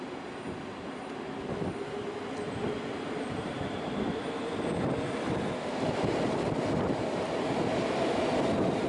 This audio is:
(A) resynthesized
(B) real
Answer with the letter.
B